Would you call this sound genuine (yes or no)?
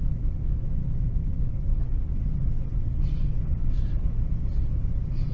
no